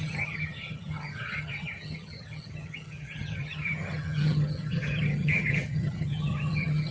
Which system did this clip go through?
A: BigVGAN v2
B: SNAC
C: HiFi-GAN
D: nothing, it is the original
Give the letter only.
C